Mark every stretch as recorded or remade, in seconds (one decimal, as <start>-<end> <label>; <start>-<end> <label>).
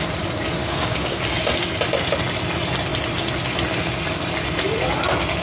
0.0-0.6 recorded; 0.6-1.2 remade; 1.2-5.4 recorded